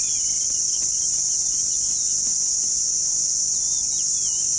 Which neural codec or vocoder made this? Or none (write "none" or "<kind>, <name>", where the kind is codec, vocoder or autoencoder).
none